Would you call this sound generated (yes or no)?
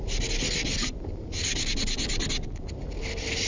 no